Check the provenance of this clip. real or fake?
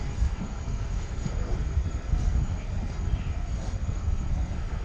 fake